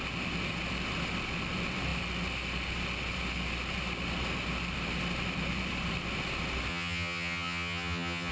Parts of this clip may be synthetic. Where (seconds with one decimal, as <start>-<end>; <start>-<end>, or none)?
6.7-8.3